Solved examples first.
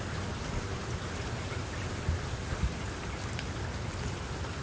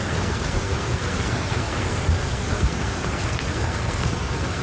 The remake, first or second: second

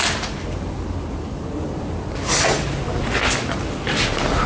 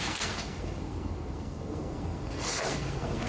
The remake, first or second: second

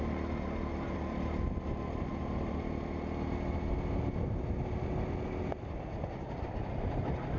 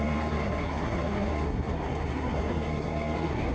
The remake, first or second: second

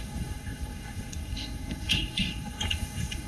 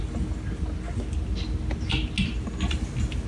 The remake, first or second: first